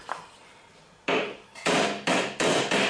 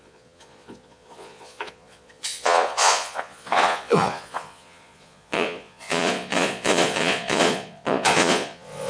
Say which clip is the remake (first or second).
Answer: second